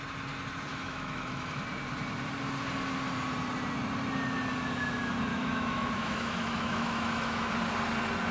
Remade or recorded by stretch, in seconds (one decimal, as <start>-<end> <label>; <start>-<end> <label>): 0.0-0.7 recorded; 0.7-1.6 remade; 1.6-5.3 recorded; 5.3-7.5 remade; 7.5-8.3 recorded